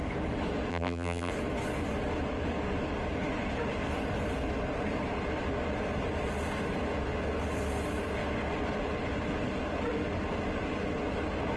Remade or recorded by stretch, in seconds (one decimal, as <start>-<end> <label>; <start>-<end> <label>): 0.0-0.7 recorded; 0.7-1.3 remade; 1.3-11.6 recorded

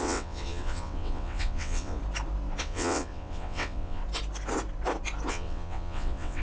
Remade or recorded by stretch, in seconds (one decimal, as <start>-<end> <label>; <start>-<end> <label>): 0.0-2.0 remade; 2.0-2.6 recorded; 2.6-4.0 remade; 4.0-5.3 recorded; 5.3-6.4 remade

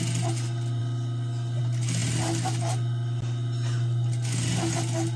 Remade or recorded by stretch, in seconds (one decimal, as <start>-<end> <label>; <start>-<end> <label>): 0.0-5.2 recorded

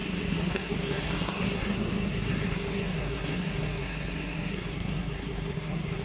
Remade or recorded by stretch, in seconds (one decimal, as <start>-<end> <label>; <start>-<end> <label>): 0.0-6.0 remade

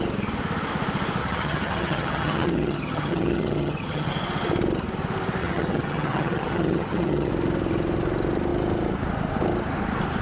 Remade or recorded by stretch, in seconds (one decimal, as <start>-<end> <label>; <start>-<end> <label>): 0.0-1.2 recorded; 1.2-4.1 remade; 4.1-5.4 recorded; 5.4-7.3 remade; 7.3-10.2 recorded

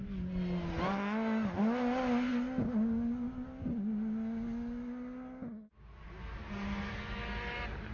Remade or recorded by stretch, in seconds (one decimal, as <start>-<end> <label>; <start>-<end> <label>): 0.0-7.9 recorded